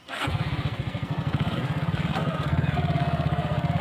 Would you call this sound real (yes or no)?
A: no